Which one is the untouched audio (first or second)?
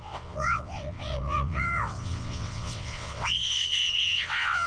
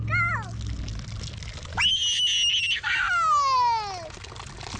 second